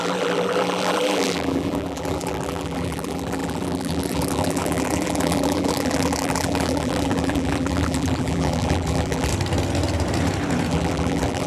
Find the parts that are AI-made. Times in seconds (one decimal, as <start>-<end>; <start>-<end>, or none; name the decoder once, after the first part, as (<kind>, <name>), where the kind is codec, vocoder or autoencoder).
0.0-9.3 (vocoder, BigVGAN v2); 10.7-11.5